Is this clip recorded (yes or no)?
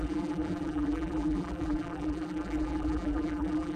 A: no